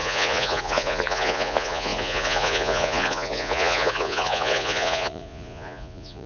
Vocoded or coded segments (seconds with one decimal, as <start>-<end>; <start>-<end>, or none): 0.0-6.3